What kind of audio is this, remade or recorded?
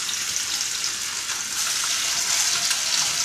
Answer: recorded